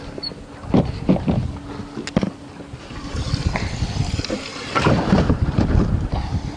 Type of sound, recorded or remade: recorded